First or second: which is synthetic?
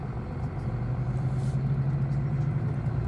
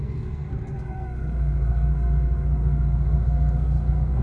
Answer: second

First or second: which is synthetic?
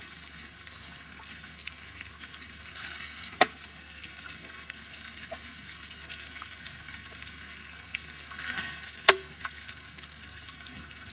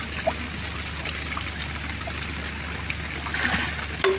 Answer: first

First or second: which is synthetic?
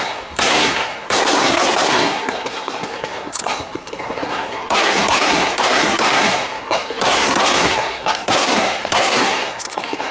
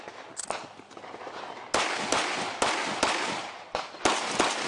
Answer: first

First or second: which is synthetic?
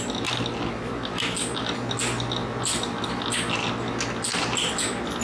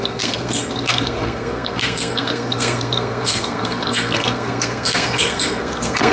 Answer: second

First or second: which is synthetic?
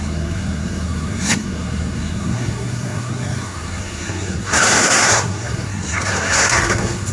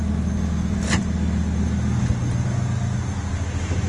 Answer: first